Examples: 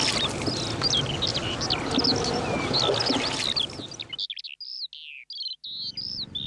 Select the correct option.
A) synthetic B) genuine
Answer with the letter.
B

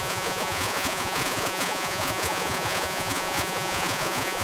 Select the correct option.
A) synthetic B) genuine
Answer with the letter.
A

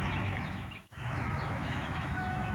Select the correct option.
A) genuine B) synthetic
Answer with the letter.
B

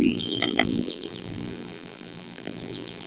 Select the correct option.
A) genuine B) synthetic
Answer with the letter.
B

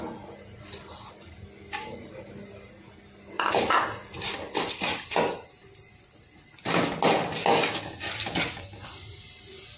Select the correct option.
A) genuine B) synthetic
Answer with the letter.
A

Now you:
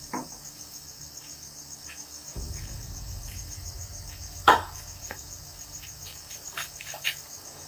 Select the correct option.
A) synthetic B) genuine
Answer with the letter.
A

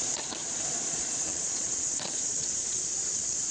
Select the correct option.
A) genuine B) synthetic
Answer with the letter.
B